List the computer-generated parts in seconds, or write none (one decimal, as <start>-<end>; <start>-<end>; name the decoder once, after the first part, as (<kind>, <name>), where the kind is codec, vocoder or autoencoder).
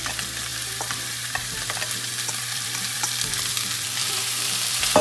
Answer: 0.5-3.5 (vocoder, BigVGAN v2); 4.0-5.0